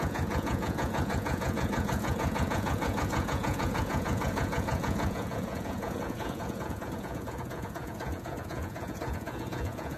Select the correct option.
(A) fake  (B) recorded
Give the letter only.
A